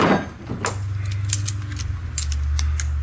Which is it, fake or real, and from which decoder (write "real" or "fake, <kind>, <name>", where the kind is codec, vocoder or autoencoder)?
real